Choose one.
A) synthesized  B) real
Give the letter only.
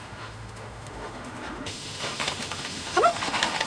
A